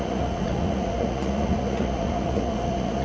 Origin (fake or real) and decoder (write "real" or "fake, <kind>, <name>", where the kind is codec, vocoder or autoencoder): fake, vocoder, Vocos